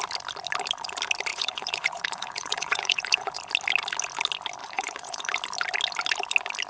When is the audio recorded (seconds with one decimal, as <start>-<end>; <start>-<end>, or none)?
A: 0.0-1.3; 3.4-4.6; 5.3-6.7